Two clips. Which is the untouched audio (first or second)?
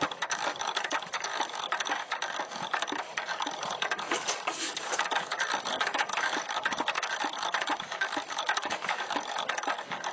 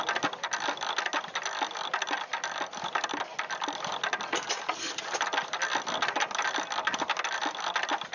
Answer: second